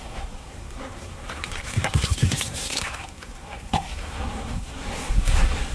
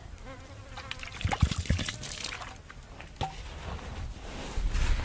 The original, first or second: second